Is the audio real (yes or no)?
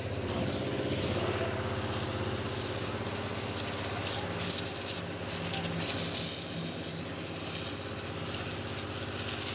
yes